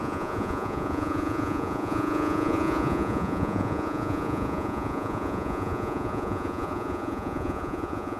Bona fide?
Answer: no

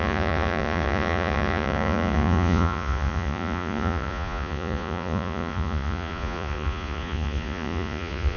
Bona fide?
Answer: no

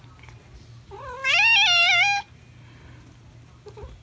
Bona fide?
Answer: yes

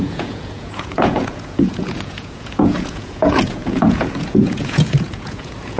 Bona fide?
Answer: no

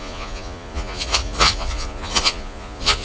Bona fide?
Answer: no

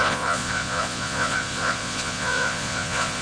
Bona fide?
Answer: no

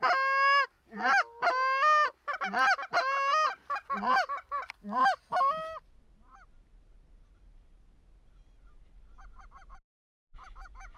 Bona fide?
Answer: yes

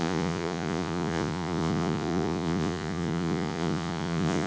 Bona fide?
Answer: no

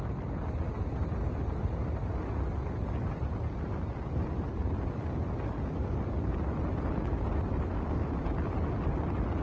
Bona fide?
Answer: yes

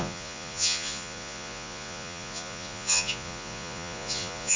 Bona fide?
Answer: no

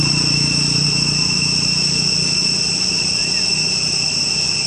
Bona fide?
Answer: yes